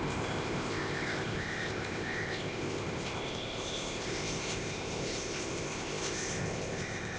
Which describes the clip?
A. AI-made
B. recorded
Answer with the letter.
A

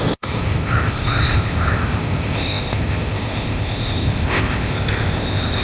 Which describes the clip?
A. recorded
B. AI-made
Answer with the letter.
B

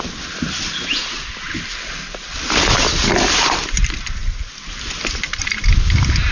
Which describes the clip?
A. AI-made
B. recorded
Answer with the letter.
B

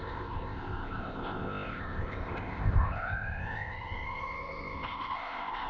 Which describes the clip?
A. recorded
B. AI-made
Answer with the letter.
B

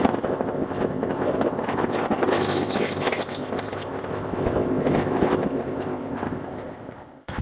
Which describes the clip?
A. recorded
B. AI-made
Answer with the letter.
B